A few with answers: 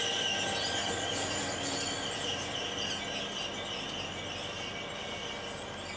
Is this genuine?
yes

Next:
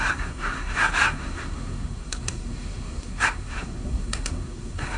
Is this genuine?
no